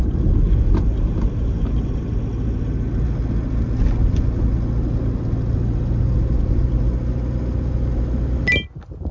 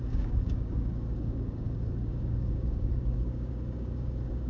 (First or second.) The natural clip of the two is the first